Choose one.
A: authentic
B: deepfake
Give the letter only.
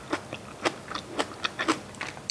A